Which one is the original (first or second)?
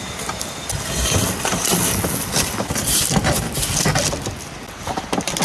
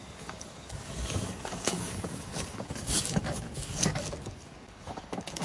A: first